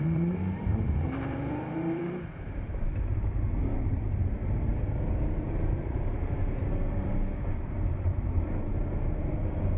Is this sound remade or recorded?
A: remade